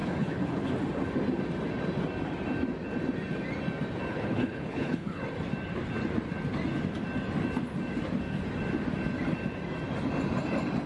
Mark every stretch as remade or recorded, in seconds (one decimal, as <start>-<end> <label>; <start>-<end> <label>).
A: 0.0-0.7 remade; 0.7-4.1 recorded; 4.1-5.2 remade; 5.2-10.9 recorded